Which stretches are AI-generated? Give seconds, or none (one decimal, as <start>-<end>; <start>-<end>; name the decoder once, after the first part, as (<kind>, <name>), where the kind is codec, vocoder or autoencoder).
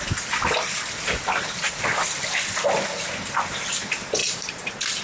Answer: 4.2-5.0 (vocoder, BigVGAN v2)